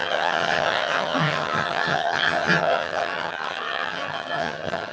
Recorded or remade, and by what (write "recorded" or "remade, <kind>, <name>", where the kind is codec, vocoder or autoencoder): remade, vocoder, HiFi-GAN